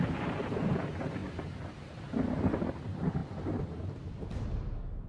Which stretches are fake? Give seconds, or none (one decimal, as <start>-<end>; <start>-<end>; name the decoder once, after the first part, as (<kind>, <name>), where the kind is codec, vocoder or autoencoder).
none